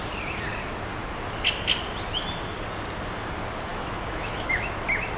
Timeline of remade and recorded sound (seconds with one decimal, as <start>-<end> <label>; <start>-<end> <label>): 0.0-3.7 recorded; 3.7-4.7 remade; 4.7-5.2 recorded